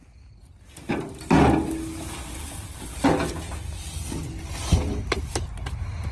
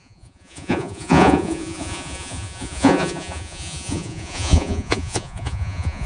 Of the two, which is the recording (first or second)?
first